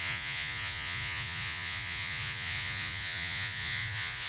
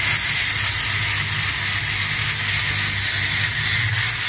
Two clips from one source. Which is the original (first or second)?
second